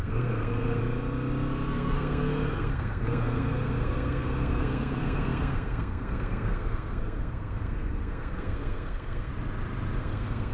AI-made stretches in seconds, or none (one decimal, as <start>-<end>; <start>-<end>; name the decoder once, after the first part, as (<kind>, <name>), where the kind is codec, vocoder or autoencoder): 0.0-0.8 (codec, SNAC); 1.7-9.3; 10.0-10.5